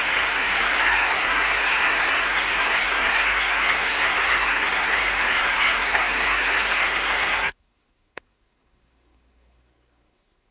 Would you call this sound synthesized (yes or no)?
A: yes